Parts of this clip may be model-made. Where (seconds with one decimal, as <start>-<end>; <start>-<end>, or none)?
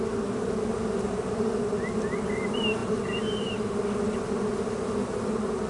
none